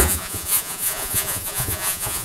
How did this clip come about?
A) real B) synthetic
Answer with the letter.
B